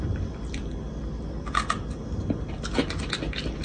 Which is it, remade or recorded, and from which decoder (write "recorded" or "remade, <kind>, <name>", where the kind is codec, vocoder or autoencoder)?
recorded